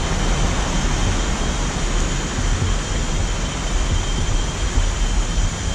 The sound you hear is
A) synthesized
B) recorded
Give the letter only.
B